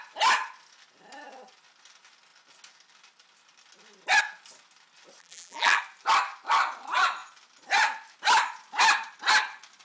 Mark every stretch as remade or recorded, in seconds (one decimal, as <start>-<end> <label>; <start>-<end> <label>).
0.0-5.2 recorded; 5.2-5.8 remade; 5.8-9.8 recorded